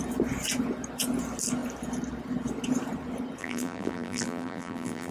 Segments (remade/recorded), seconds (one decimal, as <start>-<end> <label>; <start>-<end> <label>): 0.0-3.4 recorded; 3.4-5.1 remade